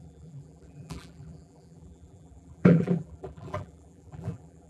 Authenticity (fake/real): fake